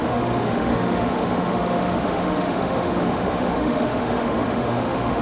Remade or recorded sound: remade